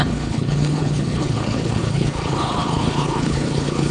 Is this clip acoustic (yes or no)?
no